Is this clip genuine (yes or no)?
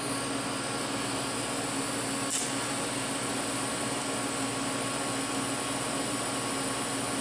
yes